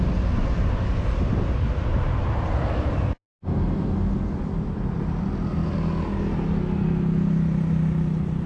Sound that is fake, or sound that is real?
real